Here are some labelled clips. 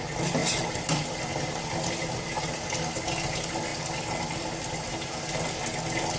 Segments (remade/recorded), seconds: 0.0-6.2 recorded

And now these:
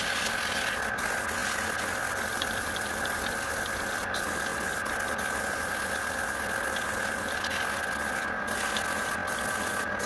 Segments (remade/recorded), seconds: 0.0-1.4 recorded; 1.4-2.9 remade; 2.9-4.5 recorded; 4.5-5.7 remade; 5.7-10.1 recorded

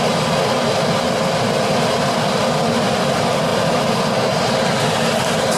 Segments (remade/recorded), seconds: 0.0-3.5 recorded; 3.5-4.0 remade; 4.0-5.6 recorded